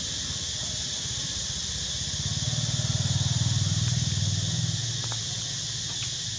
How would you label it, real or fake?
real